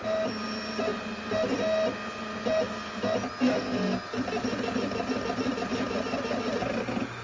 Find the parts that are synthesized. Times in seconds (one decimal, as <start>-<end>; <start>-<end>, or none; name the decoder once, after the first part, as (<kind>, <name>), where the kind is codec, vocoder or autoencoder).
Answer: none